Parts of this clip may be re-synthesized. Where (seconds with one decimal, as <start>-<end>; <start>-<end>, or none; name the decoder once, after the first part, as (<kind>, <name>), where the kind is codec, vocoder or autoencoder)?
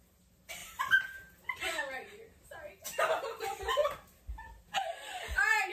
none